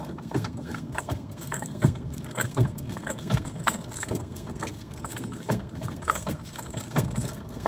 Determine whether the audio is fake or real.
fake